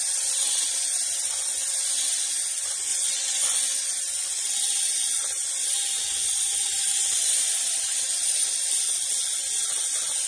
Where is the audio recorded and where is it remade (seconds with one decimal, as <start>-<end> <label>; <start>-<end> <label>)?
0.0-2.9 recorded; 2.9-3.4 remade; 3.4-10.3 recorded